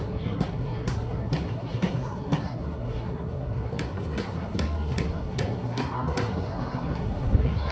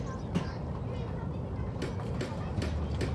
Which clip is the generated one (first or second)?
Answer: first